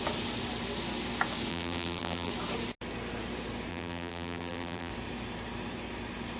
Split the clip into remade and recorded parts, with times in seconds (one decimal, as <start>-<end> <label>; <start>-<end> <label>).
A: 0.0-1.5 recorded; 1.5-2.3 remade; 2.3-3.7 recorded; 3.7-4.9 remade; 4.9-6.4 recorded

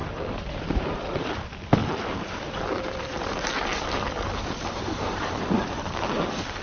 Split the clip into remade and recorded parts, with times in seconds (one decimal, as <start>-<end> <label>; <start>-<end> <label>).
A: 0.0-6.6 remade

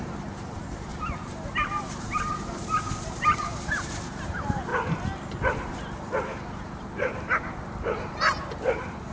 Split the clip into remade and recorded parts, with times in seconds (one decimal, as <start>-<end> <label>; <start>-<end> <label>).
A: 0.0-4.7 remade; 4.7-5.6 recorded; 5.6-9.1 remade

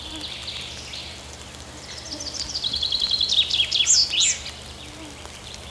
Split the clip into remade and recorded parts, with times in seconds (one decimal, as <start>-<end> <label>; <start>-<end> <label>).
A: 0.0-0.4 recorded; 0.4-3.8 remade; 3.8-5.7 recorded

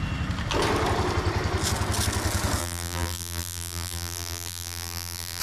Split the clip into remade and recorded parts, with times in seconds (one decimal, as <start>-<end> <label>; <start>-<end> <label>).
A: 0.0-2.6 recorded; 2.6-5.4 remade

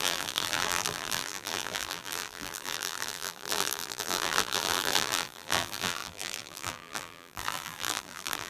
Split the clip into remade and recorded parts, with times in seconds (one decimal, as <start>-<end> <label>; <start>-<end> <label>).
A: 0.0-8.5 remade

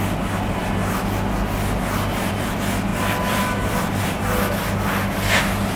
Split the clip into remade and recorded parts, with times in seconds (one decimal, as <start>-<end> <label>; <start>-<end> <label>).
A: 0.0-2.9 recorded; 2.9-4.2 remade; 4.2-5.8 recorded